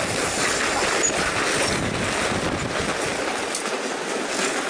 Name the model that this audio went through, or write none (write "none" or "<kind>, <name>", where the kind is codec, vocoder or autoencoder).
none